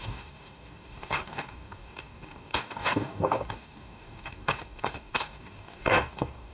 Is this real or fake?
fake